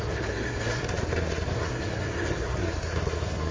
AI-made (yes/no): yes